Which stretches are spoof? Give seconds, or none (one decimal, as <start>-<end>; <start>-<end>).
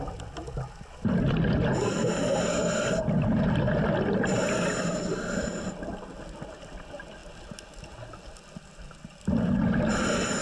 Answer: none